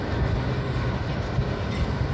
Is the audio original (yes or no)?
yes